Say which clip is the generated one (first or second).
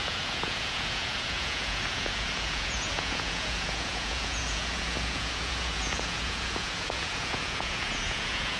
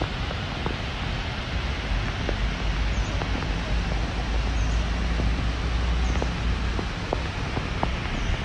first